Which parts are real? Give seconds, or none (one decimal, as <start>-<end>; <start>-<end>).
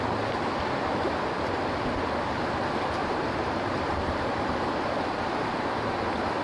0.0-3.0; 5.5-6.4